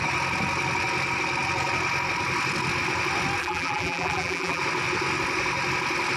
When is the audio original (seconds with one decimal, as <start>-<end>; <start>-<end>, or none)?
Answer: 0.0-3.4; 4.6-6.2

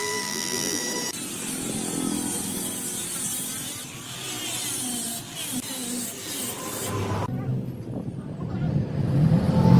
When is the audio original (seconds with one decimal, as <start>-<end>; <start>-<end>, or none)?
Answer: 0.8-9.8

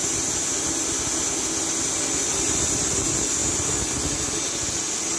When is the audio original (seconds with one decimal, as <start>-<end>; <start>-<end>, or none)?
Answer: 0.0-5.2

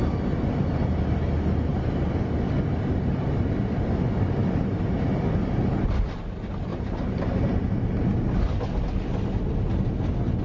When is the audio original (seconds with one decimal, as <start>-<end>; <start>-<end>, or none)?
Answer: 0.0-1.7; 2.4-4.4; 5.0-5.4; 6.1-6.7; 7.9-10.4

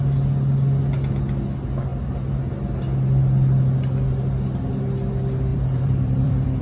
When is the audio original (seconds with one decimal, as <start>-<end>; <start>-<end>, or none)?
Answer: 0.0-5.5

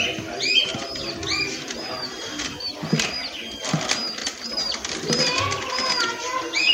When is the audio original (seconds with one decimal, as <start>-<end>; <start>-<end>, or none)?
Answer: 0.0-0.7; 1.9-6.7

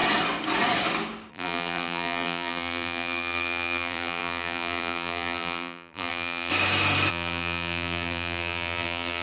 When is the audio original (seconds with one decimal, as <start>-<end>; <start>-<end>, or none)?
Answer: 0.0-1.3; 6.5-7.1